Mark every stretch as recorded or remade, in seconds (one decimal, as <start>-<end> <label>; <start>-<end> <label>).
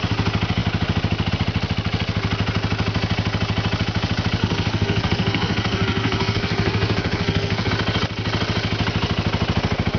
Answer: 0.0-4.4 recorded; 4.4-7.7 remade; 7.7-10.0 recorded